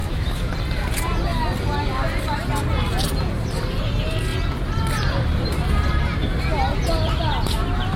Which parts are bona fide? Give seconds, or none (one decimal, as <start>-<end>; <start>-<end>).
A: 0.5-8.0